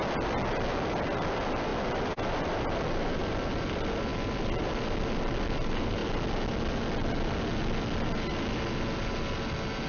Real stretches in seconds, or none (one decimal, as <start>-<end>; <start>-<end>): 0.0-9.9